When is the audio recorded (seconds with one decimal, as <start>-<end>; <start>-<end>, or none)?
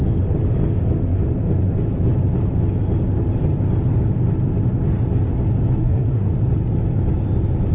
0.0-5.8; 6.3-7.7